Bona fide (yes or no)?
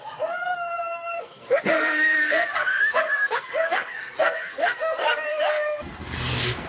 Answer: no